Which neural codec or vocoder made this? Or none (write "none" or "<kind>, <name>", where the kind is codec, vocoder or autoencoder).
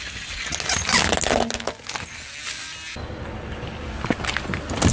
none